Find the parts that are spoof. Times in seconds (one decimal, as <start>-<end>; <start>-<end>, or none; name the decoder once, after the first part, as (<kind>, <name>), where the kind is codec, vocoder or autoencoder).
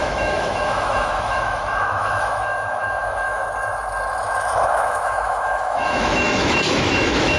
0.0-3.4 (autoencoder, DAC-VAE); 4.2-7.4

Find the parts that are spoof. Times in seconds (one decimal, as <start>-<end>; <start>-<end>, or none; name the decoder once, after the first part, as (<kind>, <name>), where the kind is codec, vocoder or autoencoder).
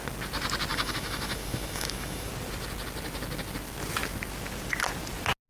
0.7-2.3 (autoencoder, DAC-VAE)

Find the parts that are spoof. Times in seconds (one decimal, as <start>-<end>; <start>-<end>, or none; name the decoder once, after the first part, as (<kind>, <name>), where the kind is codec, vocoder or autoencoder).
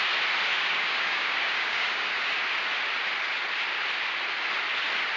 0.5-2.1 (codec, DAC)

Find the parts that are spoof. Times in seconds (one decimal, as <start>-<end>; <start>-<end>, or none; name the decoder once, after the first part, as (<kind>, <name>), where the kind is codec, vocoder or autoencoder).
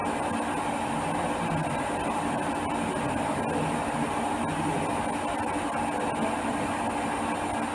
none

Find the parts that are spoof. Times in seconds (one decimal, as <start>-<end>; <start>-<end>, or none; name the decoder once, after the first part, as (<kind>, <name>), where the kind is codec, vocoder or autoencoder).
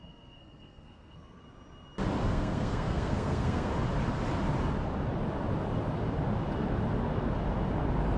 0.0-1.4 (codec, SNAC); 2.3-3.7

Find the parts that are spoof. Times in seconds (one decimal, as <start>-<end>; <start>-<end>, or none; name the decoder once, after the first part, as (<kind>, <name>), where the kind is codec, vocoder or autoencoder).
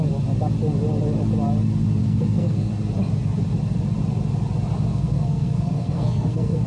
2.0-2.7 (codec, SNAC); 4.9-6.7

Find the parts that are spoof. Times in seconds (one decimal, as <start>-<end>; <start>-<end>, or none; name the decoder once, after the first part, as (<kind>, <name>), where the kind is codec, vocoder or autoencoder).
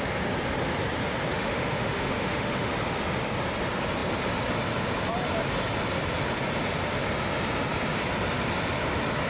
1.3-2.7 (autoencoder, DAC-VAE)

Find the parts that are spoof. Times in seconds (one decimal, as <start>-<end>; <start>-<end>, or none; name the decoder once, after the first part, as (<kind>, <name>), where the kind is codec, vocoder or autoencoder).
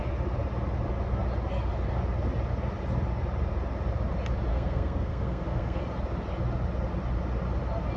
4.5-5.8 (codec, SNAC)